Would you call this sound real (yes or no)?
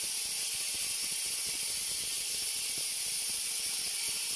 yes